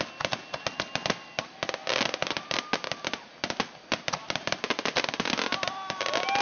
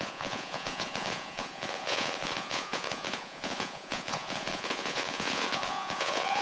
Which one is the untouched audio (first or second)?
first